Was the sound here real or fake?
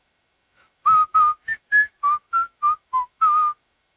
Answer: fake